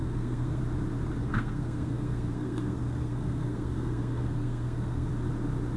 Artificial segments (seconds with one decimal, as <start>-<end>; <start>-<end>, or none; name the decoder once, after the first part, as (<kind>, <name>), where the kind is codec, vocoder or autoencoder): 0.0-0.6 (codec, SNAC); 1.2-5.1